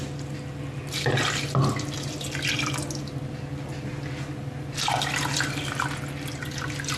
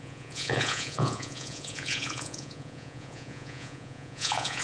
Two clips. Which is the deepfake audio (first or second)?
second